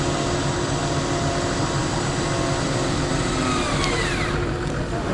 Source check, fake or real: real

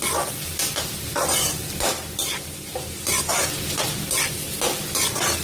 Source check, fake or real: real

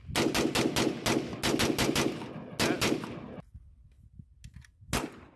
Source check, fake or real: real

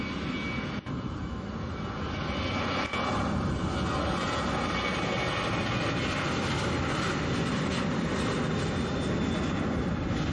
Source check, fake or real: real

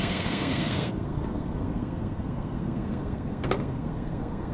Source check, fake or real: fake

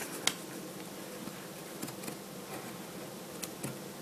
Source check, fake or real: real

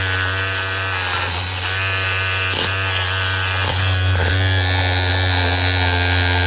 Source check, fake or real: real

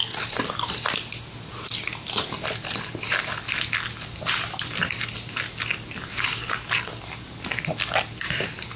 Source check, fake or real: real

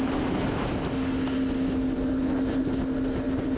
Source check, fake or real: real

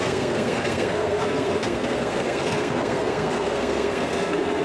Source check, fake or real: fake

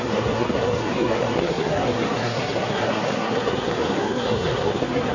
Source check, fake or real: fake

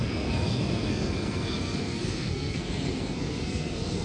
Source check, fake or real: fake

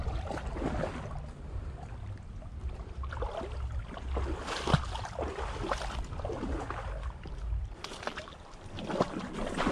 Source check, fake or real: real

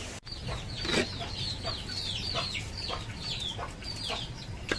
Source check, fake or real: real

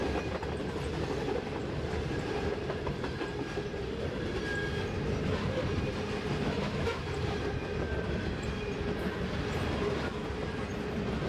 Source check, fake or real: real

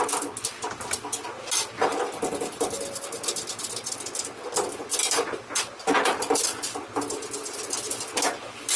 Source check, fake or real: real